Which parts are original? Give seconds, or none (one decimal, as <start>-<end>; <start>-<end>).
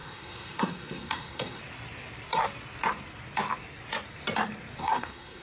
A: 1.6-4.8